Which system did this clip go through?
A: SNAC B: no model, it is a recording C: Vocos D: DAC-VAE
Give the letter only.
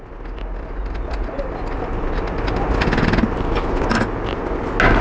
B